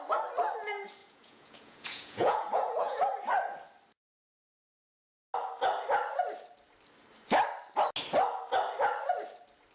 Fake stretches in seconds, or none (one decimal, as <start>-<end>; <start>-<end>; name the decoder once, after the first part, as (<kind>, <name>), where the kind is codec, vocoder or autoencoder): 1.0-3.0 (vocoder, Vocos)